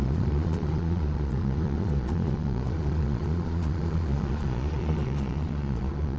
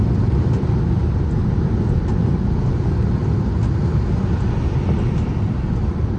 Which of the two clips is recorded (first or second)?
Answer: second